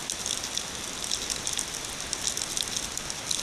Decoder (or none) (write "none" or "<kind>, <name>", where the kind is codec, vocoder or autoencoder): none